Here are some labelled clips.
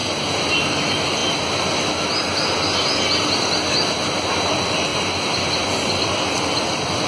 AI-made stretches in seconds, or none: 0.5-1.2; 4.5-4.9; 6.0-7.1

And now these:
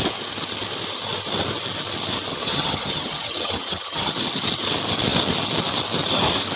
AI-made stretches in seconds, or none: 2.3-4.1